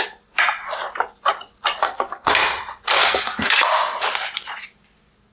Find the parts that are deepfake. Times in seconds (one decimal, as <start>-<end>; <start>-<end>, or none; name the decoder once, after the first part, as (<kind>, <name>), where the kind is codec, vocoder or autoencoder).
1.8-2.3 (codec, SNAC); 3.0-3.5